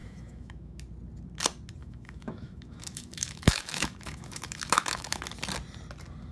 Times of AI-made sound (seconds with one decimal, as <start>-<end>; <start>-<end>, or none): 0.0-0.8; 1.8-5.2